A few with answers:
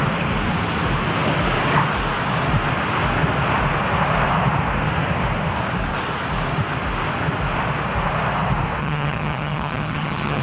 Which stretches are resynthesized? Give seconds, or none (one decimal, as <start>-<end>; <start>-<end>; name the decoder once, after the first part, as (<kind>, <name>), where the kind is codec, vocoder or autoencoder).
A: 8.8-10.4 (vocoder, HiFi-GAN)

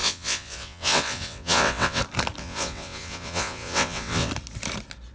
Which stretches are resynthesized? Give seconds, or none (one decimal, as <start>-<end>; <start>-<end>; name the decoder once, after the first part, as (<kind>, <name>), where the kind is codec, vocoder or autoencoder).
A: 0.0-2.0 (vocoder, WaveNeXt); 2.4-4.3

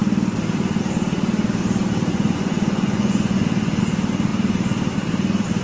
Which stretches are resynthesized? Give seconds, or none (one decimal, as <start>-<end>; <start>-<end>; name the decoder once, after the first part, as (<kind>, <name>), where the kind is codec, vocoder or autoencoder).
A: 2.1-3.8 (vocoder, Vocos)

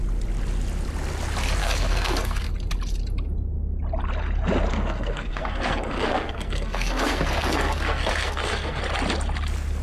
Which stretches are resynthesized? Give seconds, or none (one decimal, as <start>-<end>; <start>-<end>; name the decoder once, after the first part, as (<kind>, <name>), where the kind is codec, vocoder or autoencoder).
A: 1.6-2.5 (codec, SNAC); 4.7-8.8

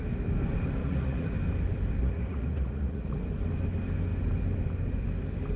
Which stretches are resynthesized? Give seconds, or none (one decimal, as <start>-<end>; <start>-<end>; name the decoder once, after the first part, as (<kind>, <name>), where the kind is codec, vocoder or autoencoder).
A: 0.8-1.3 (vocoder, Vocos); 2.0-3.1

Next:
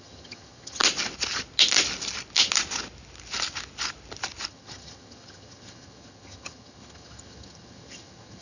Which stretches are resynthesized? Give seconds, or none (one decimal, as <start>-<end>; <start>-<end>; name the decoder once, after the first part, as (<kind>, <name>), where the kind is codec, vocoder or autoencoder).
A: 0.0-0.8 (vocoder, HiFi-GAN); 4.5-8.4